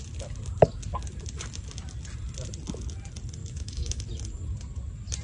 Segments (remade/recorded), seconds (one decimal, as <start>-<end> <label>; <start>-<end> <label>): 0.0-3.4 recorded; 3.4-4.0 remade; 4.0-5.2 recorded